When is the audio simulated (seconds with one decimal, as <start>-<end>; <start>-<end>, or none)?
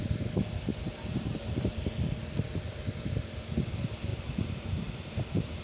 0.7-1.9; 4.1-5.6